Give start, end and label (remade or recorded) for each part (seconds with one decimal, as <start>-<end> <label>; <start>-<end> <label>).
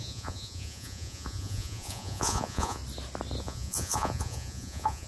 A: 0.0-2.8 remade; 2.8-3.4 recorded; 3.4-5.1 remade